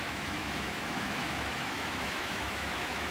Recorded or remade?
remade